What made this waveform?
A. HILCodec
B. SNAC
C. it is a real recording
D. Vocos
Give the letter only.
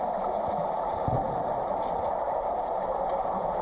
C